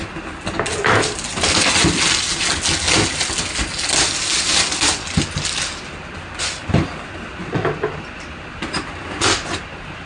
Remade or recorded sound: recorded